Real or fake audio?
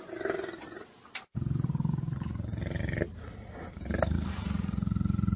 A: real